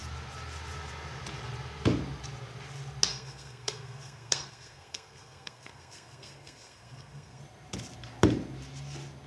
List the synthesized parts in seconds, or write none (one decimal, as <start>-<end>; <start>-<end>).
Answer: 3.1-7.4

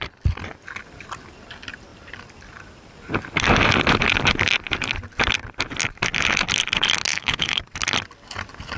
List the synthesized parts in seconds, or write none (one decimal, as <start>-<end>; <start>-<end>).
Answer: 7.1-7.6

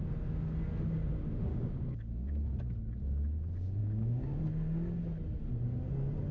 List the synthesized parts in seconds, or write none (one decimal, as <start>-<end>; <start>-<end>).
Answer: 1.5-2.1; 3.8-4.4

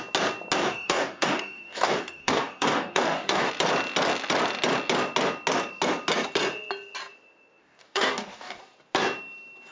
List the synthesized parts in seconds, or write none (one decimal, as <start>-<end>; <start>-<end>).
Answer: 0.6-3.5; 7.6-8.6

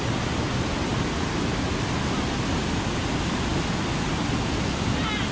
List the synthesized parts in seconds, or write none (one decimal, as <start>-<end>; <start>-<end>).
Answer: none

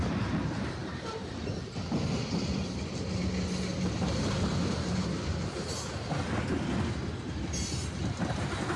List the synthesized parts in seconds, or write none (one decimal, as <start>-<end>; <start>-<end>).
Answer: 0.8-1.3; 3.7-5.9

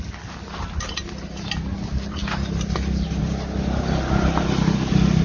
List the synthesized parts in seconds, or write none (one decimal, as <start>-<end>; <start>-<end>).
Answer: none